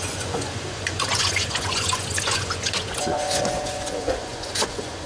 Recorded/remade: remade